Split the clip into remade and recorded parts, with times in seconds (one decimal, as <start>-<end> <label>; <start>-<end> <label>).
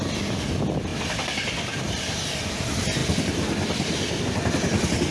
0.0-0.9 recorded; 0.9-2.5 remade; 2.5-3.0 recorded; 3.0-4.2 remade; 4.2-5.1 recorded